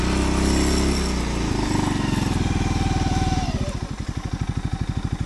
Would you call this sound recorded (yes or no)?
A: yes